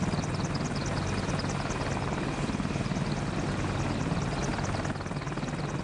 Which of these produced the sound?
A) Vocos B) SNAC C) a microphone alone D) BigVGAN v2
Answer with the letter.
C